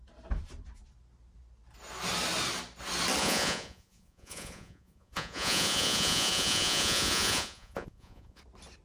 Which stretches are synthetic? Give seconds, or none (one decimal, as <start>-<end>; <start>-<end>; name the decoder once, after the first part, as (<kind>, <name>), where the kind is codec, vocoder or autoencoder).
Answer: 3.2-8.4 (vocoder, Vocos)